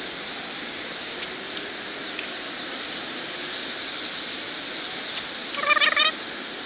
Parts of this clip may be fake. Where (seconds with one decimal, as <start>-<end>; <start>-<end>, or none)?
none